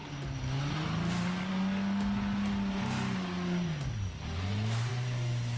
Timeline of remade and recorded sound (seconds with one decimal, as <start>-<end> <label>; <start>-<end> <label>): 0.0-5.6 recorded